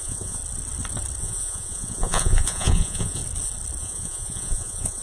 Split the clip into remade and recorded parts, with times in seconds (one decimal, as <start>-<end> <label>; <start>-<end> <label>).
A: 0.0-0.4 remade; 0.4-1.2 recorded; 1.2-3.2 remade; 3.2-3.8 recorded; 3.8-5.0 remade